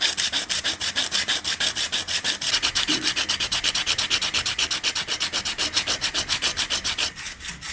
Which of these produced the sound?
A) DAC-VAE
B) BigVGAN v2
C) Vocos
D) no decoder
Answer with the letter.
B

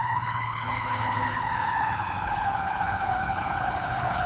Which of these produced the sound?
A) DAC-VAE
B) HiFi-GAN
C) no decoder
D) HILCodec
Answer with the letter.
D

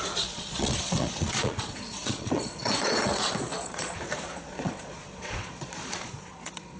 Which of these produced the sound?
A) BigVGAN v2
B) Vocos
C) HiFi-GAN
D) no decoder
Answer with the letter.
B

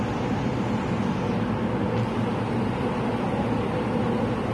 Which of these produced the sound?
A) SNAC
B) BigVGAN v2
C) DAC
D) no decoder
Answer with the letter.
D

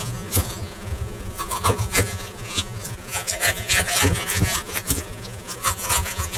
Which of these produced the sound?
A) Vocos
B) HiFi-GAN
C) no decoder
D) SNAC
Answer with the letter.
A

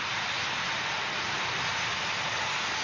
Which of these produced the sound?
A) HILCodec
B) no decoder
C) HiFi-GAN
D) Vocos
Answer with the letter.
B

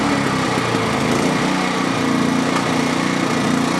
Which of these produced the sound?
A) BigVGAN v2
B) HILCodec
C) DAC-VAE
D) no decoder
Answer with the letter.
D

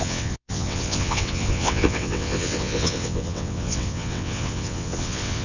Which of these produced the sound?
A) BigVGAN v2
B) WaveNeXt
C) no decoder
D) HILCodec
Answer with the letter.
B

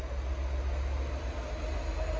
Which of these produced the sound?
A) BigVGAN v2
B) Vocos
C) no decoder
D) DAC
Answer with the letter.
C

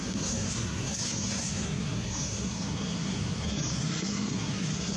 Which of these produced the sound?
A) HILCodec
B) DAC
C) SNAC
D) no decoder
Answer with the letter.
C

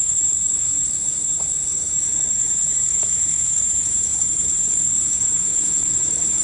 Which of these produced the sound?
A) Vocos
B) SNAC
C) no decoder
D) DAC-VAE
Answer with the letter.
D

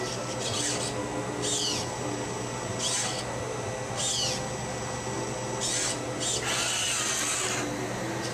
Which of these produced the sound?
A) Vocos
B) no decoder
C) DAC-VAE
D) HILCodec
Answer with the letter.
B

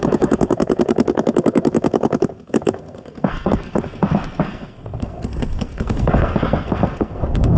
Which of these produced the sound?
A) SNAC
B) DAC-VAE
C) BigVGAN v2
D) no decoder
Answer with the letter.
A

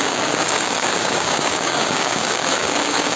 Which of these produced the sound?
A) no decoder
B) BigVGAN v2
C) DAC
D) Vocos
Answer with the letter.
C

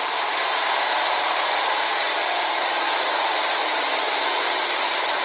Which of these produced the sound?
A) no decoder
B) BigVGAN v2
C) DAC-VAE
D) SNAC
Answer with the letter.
B